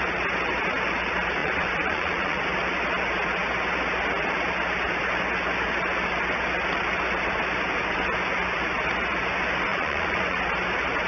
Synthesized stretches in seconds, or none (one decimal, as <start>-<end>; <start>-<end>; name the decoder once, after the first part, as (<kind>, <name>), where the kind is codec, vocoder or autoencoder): 1.4-2.4 (vocoder, Vocos); 9.7-10.4